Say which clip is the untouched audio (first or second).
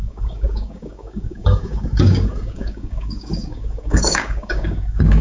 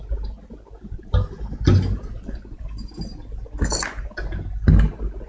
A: second